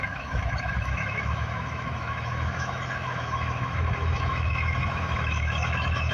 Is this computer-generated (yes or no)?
yes